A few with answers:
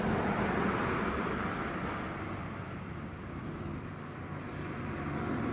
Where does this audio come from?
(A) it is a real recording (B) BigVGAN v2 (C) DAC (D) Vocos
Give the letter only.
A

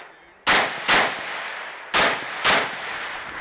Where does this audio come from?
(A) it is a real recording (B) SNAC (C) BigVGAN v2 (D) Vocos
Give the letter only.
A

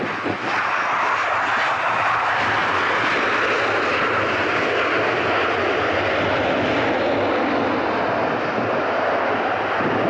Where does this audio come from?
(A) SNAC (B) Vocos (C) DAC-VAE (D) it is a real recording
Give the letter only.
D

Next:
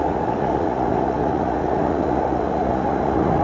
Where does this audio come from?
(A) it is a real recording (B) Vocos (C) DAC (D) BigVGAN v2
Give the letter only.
B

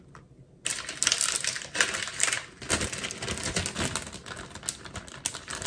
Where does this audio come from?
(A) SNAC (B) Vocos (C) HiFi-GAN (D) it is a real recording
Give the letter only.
D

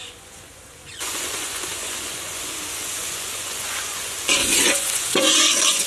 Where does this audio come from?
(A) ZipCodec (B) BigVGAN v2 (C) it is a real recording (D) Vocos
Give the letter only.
D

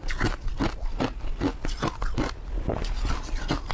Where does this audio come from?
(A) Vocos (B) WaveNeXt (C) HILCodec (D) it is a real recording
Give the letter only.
D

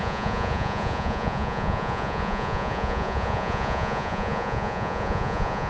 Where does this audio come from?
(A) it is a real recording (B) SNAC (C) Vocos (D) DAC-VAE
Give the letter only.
C